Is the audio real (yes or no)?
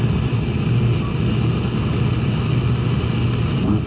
yes